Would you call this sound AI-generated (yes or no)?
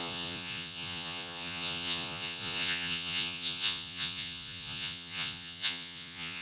yes